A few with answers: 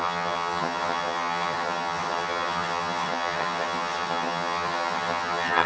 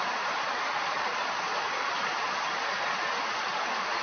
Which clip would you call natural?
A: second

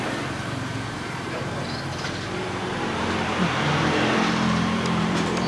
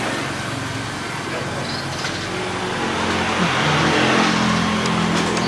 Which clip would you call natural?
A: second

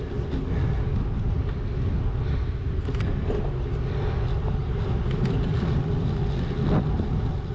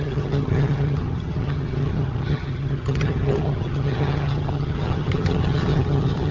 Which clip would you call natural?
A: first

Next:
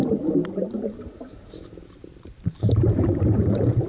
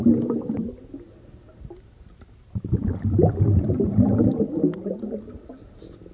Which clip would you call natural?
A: second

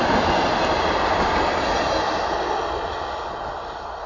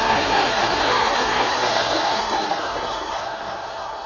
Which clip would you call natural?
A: first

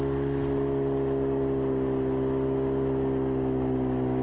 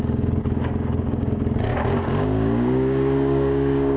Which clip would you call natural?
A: first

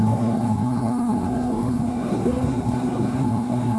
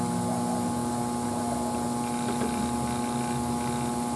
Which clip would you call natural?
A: second